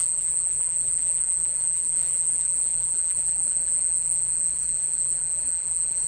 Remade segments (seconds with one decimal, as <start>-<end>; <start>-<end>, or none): 0.0-6.1